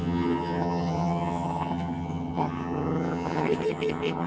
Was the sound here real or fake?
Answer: fake